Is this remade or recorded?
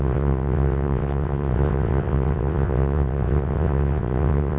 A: remade